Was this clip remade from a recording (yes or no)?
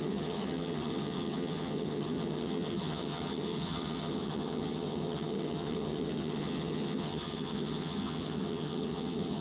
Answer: yes